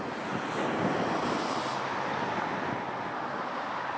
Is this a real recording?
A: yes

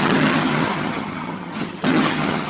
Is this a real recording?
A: no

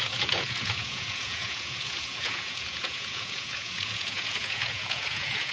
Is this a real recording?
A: no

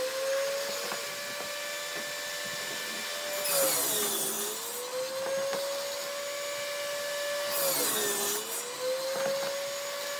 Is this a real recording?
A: yes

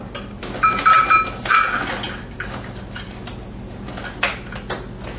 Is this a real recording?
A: yes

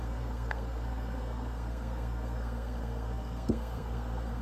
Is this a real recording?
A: no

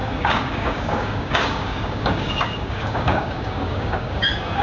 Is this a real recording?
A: no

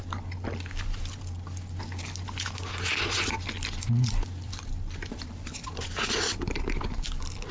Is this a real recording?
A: yes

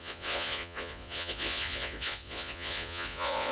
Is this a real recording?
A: no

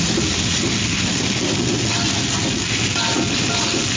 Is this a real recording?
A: yes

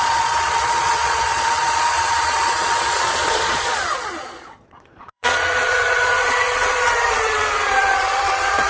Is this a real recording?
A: no